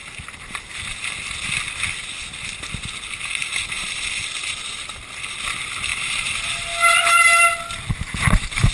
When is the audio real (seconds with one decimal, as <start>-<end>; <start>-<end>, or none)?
0.0-3.4; 4.0-5.9; 6.5-8.7